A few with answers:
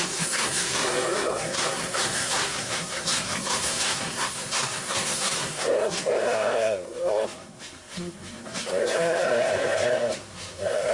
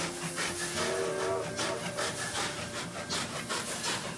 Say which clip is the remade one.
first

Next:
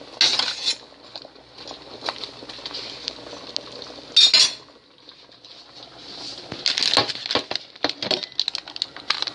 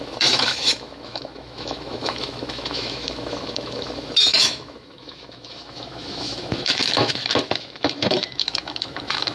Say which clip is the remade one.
second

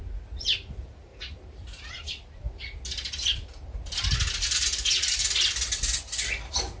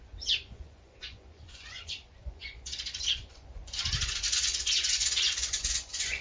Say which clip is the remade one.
second